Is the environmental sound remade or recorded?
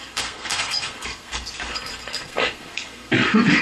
remade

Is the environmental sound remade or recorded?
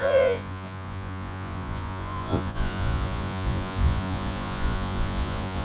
remade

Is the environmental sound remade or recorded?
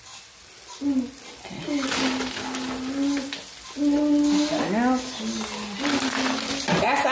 recorded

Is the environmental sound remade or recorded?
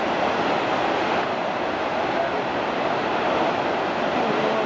recorded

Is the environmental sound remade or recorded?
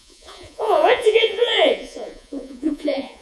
remade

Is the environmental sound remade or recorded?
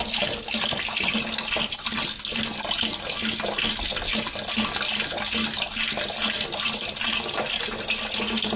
recorded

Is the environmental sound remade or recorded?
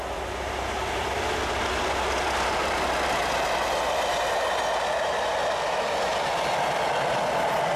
recorded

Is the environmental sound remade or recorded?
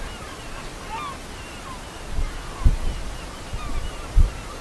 recorded